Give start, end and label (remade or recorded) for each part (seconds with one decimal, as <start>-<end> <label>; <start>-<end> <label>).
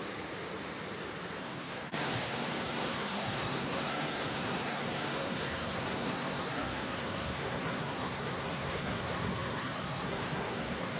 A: 0.0-1.4 recorded; 1.4-11.0 remade